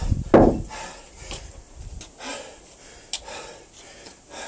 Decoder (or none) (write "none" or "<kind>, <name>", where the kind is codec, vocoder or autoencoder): none